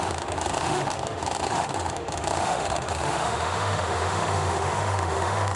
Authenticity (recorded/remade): remade